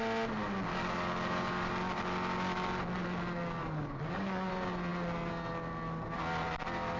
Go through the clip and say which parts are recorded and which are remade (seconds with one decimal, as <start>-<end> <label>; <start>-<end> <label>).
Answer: 0.0-0.7 recorded; 0.7-1.7 remade; 1.7-3.6 recorded; 3.6-4.5 remade; 4.5-7.0 recorded